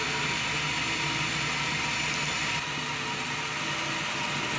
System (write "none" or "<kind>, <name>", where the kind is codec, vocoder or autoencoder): none